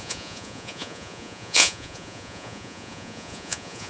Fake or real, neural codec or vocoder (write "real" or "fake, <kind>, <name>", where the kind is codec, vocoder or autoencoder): fake, vocoder, Vocos